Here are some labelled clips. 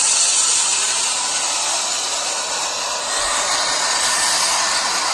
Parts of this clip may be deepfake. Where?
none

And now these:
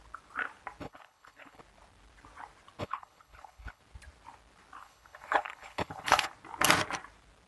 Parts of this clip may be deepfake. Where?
0.8-1.6 (codec, HILCodec); 2.8-3.8; 4.8-6.3

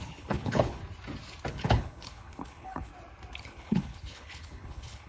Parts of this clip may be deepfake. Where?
0.0-0.8 (codec, HILCodec); 1.5-2.9; 3.4-5.1

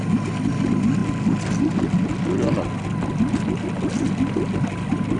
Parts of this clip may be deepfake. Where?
none

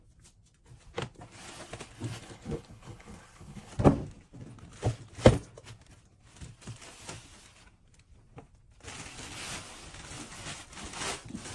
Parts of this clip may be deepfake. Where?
2.2-3.7 (codec, HILCodec)

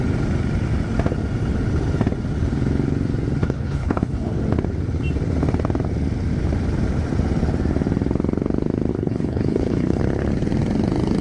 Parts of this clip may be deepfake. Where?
3.4-4.3 (codec, HILCodec); 8.9-10.0

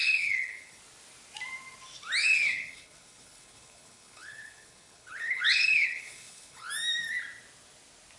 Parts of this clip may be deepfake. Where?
0.0-0.8 (codec, HILCodec); 2.2-6.7

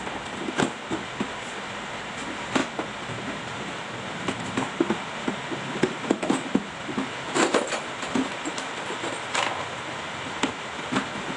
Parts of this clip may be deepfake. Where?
none